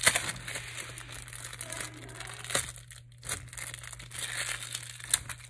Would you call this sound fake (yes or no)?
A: no